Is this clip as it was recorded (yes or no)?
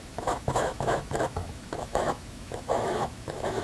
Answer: no